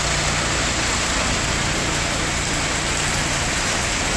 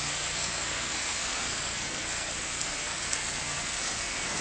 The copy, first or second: second